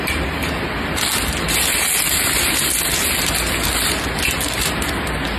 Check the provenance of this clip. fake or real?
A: real